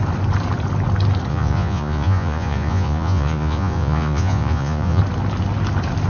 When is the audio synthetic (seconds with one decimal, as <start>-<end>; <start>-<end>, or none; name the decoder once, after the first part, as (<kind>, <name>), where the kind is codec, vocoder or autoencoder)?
1.3-5.0 (vocoder, Vocos)

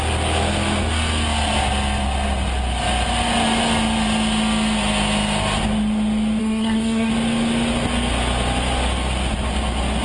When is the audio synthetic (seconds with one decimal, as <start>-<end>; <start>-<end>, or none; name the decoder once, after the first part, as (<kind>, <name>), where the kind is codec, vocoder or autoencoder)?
6.4-7.1 (codec, SNAC)

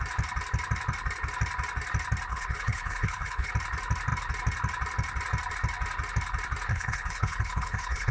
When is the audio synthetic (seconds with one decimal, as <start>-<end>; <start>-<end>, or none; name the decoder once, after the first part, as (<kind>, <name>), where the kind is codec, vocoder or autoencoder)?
2.3-3.5 (codec, HILCodec); 6.7-8.1